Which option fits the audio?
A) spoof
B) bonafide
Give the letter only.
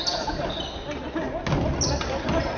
B